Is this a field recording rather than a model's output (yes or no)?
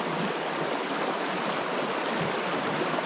yes